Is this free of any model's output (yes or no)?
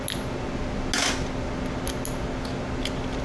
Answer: yes